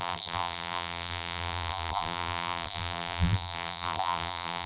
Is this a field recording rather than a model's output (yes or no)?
no